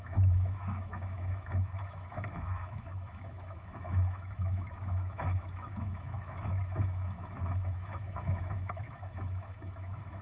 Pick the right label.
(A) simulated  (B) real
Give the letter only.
A